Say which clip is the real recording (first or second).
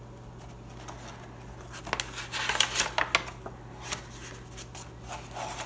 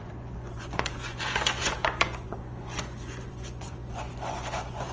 first